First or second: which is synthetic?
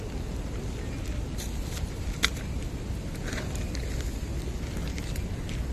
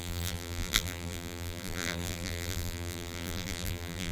second